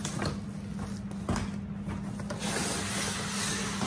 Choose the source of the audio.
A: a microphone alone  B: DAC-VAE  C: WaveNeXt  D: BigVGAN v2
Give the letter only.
A